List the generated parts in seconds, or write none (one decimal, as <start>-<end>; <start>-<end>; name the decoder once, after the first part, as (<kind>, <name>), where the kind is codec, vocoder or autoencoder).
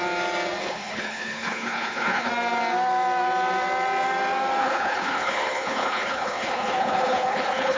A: 0.6-2.3 (codec, HILCodec); 4.6-7.8